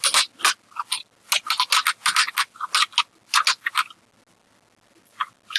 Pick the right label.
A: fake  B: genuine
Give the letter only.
B